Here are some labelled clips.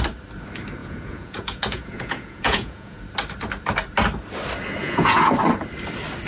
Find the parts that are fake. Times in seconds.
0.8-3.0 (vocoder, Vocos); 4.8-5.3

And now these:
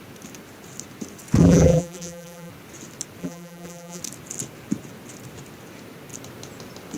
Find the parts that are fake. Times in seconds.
1.4-2.5 (vocoder, BigVGAN v2); 3.2-4.0

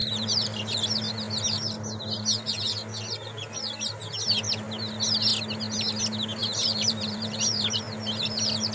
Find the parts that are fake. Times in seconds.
0.0-0.8 (vocoder, BigVGAN v2); 6.4-7.8

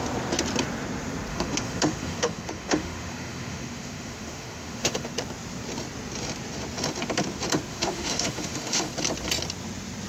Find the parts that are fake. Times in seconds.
1.3-5.1 (autoencoder, DAC-VAE); 7.7-8.9

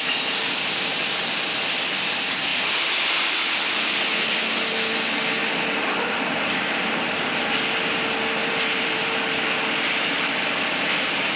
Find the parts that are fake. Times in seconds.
2.5-3.7 (vocoder, BigVGAN v2); 5.4-7.3; 8.4-9.2

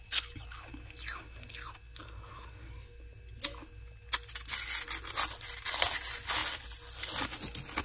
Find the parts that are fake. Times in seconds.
none

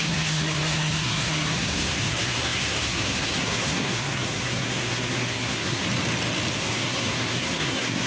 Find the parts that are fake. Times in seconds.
0.0-5.8 (codec, SNAC); 6.5-8.1

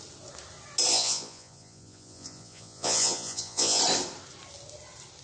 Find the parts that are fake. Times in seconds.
0.9-3.8 (vocoder, Vocos)